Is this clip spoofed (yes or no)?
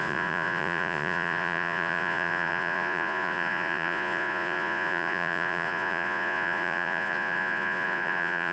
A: yes